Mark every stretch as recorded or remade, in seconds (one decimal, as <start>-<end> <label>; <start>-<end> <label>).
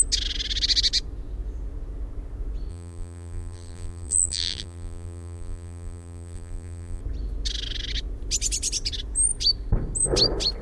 0.0-2.7 recorded; 2.7-7.0 remade; 7.0-10.6 recorded